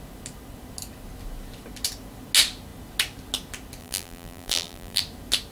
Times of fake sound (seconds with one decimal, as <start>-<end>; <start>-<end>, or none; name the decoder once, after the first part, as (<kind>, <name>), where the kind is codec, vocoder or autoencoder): 3.8-5.0 (vocoder, BigVGAN v2)